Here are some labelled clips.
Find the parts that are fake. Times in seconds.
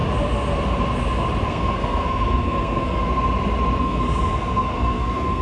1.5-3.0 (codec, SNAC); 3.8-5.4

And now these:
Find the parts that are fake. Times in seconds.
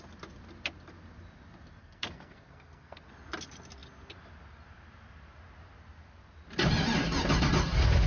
1.8-3.1 (codec, SNAC)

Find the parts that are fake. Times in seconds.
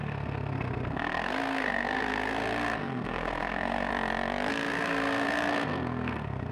0.0-3.9 (codec, SNAC); 4.5-6.5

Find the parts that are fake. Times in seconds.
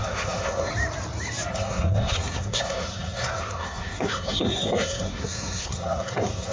0.0-0.7 (codec, SNAC); 1.5-6.5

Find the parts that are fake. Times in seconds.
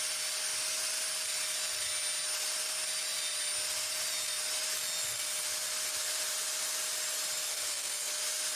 7.5-8.1 (codec, SNAC)